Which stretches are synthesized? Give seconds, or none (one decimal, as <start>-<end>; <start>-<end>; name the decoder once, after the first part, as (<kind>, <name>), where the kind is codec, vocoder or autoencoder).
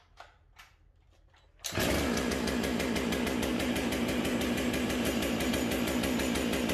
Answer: 3.5-5.5 (vocoder, BigVGAN v2)